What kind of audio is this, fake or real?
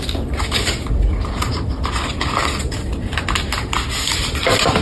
real